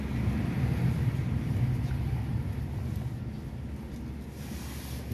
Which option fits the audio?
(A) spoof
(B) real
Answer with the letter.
B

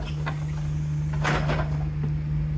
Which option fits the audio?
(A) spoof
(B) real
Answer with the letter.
B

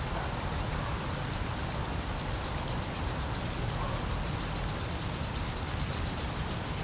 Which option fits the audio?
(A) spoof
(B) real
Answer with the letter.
B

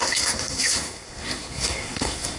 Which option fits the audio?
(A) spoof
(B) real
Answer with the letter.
A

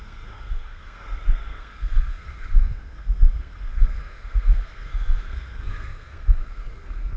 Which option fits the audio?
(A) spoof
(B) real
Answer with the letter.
A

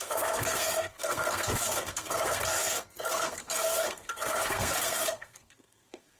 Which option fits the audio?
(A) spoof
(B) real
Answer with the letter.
A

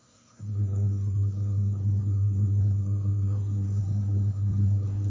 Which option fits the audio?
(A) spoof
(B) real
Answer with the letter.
A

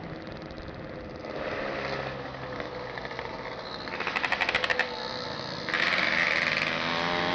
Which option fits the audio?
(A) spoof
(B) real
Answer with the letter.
B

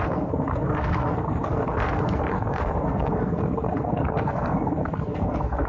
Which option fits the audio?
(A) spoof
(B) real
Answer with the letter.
A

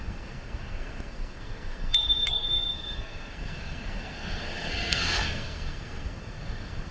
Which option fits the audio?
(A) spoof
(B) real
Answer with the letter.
A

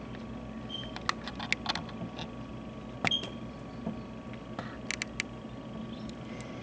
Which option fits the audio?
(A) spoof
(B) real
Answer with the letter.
B